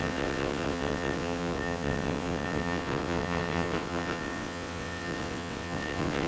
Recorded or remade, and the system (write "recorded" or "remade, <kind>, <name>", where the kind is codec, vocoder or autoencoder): remade, vocoder, WaveNeXt